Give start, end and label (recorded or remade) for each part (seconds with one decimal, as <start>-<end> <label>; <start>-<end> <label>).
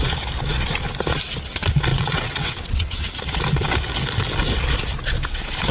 0.0-1.9 recorded; 1.9-3.1 remade; 3.1-5.7 recorded